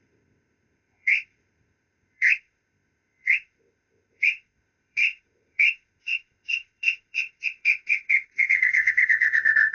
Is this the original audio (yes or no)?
no